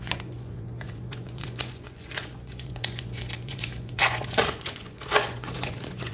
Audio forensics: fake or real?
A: fake